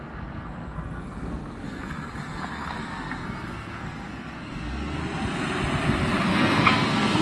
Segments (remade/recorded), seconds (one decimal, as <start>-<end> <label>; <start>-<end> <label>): 0.0-5.0 remade; 5.0-6.3 recorded; 6.3-7.2 remade